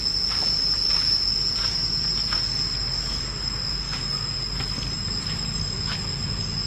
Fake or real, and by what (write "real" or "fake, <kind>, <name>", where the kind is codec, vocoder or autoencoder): real